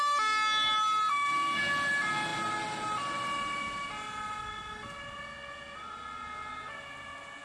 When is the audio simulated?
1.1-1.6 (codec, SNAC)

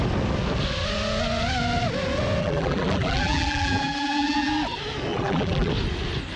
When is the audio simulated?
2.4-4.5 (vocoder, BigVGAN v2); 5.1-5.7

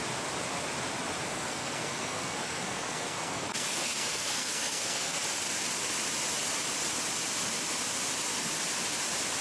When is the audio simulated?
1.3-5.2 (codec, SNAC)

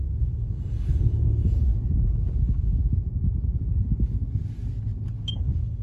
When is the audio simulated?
0.0-1.7 (codec, DAC); 2.4-2.8; 5.3-5.8

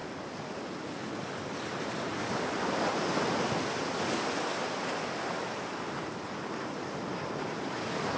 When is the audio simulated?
none

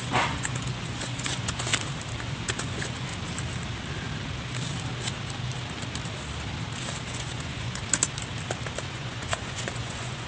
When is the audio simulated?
0.0-1.7 (vocoder, Vocos); 2.2-3.1; 7.1-7.8; 8.9-10.3